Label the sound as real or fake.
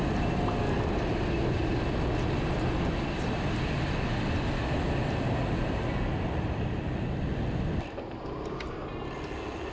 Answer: real